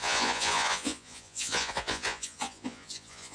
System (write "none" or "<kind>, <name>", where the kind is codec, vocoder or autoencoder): vocoder, Vocos